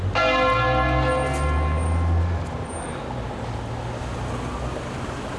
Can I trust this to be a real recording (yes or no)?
yes